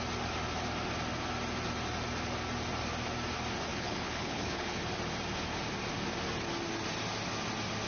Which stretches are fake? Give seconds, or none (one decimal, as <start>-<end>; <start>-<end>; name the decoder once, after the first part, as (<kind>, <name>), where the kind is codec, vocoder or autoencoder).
3.7-4.8 (codec, HILCodec)

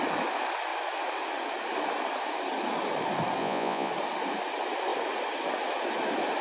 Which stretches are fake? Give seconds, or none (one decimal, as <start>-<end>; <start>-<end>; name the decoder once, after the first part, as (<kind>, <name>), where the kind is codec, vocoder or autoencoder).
3.4-3.9 (vocoder, Vocos)

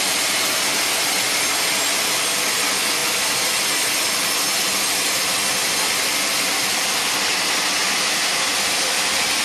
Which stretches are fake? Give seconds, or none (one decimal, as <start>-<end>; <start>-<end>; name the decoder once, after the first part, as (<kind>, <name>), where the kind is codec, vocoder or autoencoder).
none

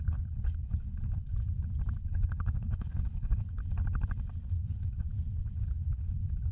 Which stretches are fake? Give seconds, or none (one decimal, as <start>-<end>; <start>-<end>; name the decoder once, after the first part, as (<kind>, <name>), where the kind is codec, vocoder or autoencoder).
0.0-1.4 (codec, HILCodec); 2.0-3.6; 4.5-5.1; 5.6-6.5

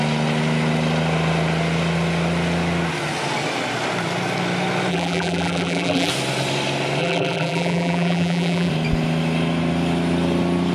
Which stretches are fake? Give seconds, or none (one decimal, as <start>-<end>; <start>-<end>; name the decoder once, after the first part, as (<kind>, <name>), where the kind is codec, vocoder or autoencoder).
4.9-6.1 (vocoder, BigVGAN v2); 7.0-8.7

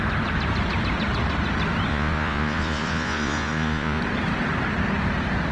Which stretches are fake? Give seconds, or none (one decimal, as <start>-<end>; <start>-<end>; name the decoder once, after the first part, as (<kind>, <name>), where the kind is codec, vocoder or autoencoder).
1.9-4.0 (vocoder, Vocos)

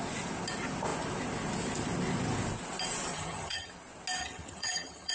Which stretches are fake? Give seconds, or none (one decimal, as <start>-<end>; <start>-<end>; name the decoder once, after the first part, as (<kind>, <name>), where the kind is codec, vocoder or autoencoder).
3.1-3.7 (vocoder, HiFi-GAN); 4.2-5.1

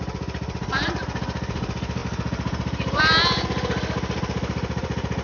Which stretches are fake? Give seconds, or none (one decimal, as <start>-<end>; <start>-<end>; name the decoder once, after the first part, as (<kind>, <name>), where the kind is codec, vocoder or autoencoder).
none